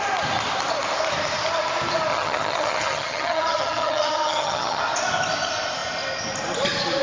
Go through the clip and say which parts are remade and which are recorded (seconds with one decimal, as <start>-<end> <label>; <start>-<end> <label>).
0.0-2.1 recorded; 2.1-4.8 remade; 4.8-7.0 recorded